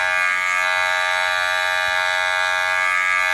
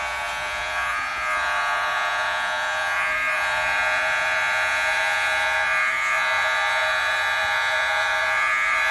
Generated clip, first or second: second